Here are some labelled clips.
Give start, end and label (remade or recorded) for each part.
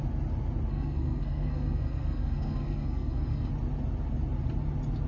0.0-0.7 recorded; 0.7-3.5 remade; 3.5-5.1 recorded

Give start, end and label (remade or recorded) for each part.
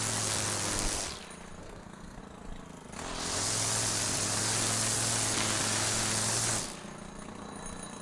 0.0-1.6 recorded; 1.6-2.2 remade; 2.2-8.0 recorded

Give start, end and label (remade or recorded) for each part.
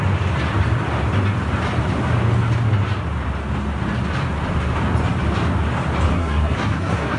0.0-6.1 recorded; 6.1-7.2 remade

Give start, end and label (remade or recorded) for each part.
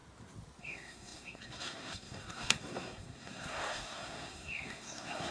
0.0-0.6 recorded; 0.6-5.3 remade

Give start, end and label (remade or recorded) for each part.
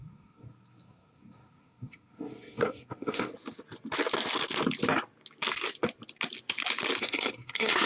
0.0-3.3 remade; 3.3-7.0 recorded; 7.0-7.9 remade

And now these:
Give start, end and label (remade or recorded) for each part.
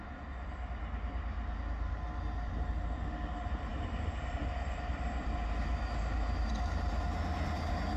0.0-8.0 recorded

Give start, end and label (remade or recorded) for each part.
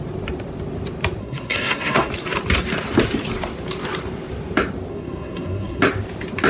0.0-1.2 recorded; 1.2-2.1 remade; 2.1-4.9 recorded; 4.9-5.8 remade; 5.8-6.5 recorded